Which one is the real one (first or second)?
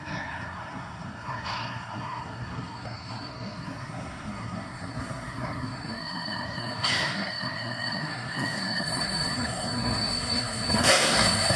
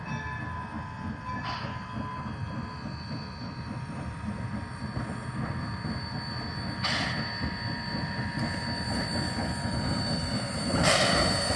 second